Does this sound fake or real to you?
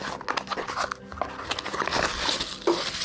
real